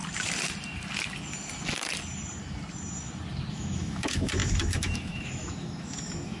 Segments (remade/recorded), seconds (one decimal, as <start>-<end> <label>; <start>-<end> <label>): 0.0-3.5 recorded; 3.5-6.4 remade